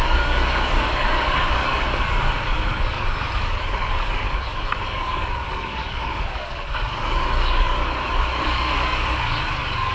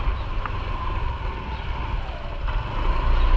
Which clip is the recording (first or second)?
second